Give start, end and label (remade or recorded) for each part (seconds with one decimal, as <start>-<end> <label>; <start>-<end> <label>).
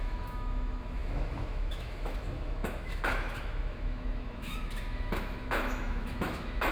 0.0-6.7 remade